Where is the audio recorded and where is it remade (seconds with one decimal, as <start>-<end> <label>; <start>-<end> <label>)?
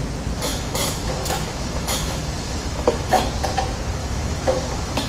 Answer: 0.0-0.5 recorded; 0.5-3.2 remade; 3.2-4.0 recorded; 4.0-5.1 remade